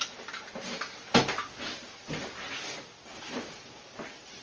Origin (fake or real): real